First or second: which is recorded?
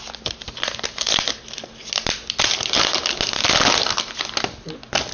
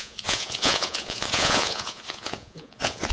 first